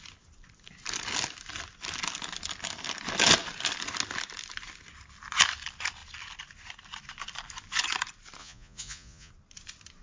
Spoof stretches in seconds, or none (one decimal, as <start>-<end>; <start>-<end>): 8.4-9.3

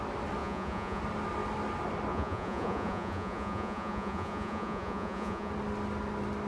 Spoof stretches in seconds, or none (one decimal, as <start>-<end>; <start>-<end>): 0.4-1.0; 2.1-5.5

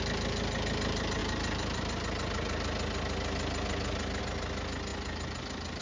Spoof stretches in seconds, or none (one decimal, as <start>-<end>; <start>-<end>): none

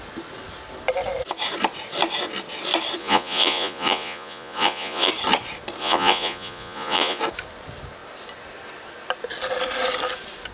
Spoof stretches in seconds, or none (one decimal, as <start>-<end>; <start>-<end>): 3.0-5.1; 5.8-7.2

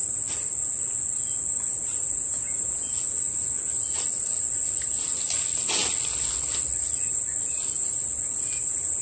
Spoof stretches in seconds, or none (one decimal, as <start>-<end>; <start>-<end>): 2.2-2.8